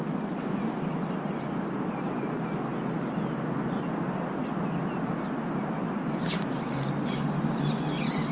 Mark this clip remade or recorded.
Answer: recorded